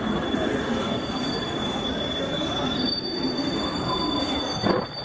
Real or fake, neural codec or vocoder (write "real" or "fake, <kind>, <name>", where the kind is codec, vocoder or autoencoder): real